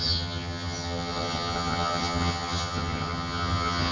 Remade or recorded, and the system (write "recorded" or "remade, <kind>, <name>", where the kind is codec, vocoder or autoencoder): remade, vocoder, HiFi-GAN